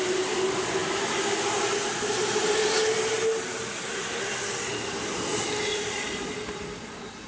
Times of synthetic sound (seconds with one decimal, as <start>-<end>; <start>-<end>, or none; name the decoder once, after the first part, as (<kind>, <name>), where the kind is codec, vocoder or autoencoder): 5.3-7.3 (vocoder, BigVGAN v2)